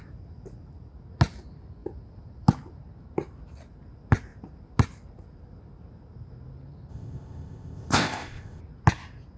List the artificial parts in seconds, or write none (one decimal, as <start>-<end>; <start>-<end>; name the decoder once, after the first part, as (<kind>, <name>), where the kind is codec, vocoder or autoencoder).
6.9-8.6 (codec, ZipCodec)